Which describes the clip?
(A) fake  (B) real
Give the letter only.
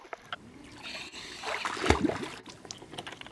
B